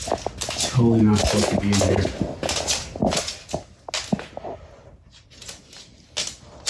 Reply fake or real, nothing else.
real